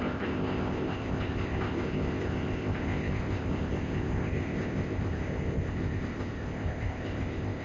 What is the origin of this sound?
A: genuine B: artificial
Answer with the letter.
B